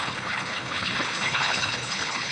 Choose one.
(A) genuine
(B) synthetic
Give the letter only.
B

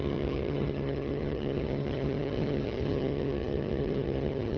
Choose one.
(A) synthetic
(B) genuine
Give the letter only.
A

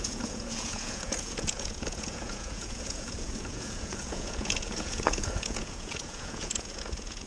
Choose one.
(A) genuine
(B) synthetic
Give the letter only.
B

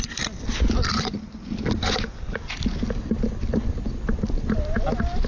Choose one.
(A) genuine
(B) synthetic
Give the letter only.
A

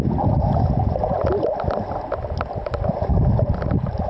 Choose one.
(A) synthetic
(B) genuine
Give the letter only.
B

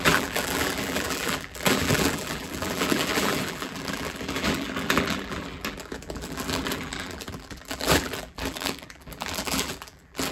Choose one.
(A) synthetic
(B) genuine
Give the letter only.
A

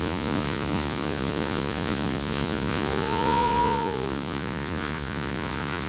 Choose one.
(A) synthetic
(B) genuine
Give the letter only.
A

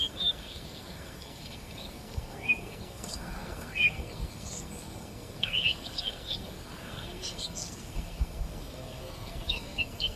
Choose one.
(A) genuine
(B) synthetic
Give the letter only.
B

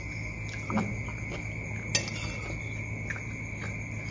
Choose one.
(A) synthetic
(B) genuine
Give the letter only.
B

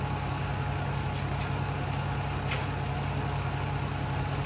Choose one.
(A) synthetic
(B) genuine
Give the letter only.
B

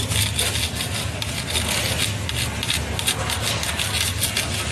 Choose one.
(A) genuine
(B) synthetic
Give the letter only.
A